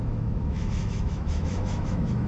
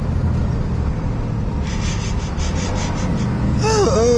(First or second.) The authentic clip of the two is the second